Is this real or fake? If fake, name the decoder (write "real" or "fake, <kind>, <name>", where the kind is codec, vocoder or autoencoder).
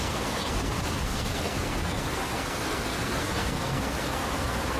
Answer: fake, codec, SNAC